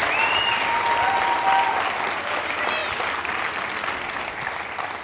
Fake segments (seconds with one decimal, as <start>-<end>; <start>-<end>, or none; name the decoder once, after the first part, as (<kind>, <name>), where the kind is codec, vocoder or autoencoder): none